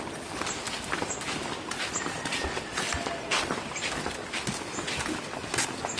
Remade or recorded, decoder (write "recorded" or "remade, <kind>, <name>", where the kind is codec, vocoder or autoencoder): recorded